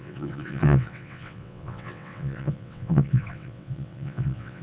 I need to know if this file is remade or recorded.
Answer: remade